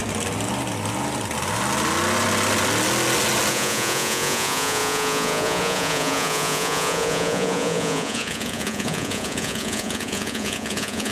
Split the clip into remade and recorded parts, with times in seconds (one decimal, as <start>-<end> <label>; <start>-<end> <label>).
0.0-3.5 recorded; 3.5-11.1 remade